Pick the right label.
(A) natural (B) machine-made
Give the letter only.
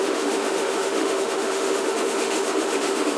B